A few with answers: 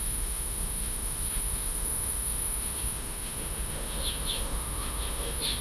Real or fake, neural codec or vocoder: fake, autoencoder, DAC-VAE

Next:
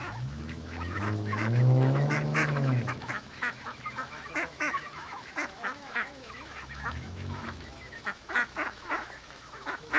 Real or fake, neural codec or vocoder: fake, autoencoder, DAC-VAE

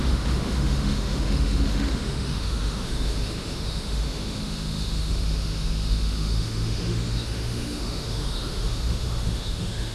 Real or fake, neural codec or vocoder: fake, autoencoder, DAC-VAE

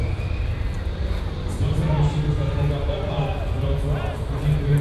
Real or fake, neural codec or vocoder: real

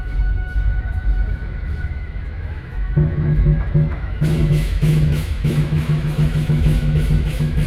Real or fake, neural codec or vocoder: fake, autoencoder, DAC-VAE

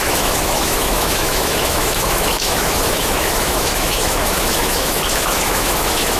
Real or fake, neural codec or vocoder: fake, autoencoder, DAC-VAE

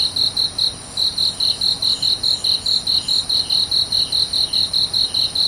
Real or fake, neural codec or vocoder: real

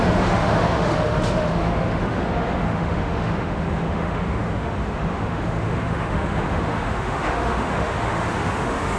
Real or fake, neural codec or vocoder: fake, autoencoder, DAC-VAE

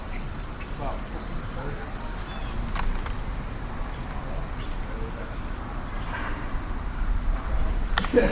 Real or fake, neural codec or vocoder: real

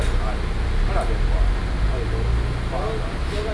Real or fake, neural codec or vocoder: real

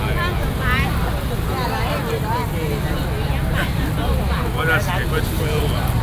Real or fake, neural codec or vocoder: real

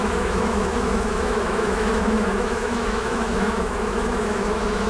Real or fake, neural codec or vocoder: fake, autoencoder, DAC-VAE